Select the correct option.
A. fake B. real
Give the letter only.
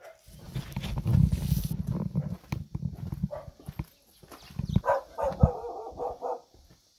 B